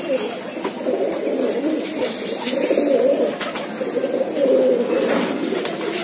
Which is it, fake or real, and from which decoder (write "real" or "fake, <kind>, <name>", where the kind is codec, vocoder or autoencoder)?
real